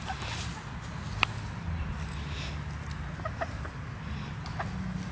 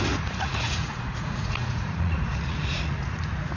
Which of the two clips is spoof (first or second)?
second